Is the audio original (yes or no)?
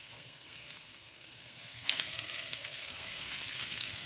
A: no